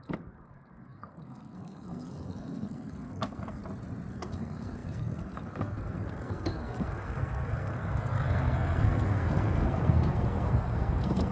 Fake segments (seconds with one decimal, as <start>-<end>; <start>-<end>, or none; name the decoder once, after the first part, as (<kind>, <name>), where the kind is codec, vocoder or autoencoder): 0.0-3.6 (codec, SNAC); 4.1-11.3

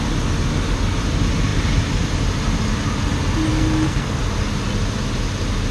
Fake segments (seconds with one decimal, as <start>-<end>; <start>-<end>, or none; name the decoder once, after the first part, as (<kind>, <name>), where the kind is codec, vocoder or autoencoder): 3.5-4.2 (codec, SNAC)

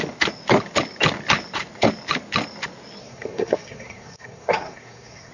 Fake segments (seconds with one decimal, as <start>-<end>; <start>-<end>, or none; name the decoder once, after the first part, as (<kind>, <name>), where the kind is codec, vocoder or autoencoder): 3.0-5.3 (codec, SNAC)

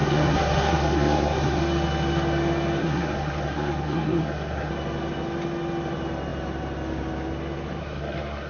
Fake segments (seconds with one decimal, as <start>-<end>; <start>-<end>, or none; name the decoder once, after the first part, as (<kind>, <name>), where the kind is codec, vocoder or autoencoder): 0.0-1.6 (codec, SNAC); 2.8-4.7; 7.8-8.5